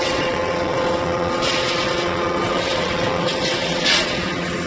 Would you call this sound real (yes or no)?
no